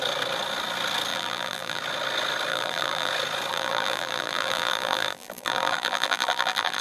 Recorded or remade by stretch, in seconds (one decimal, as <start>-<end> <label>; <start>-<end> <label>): 0.0-1.1 recorded; 1.1-1.8 remade; 1.8-2.5 recorded; 2.5-3.1 remade; 3.1-3.5 recorded; 3.5-6.8 remade